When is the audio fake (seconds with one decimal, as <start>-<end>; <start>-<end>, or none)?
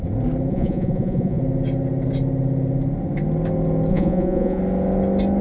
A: 0.5-1.4; 3.9-4.6